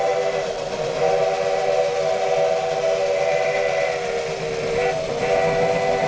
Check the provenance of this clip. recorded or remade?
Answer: recorded